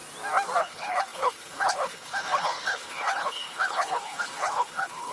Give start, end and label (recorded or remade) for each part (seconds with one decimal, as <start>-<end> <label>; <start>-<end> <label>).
0.0-0.6 recorded; 0.6-5.1 remade